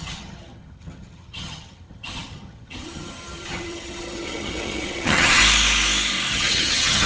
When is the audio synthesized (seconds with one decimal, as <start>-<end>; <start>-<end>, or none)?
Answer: 0.0-5.4; 6.3-7.1